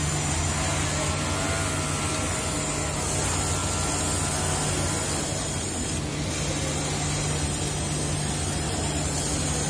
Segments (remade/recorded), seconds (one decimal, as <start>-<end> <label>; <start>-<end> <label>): 0.0-9.7 recorded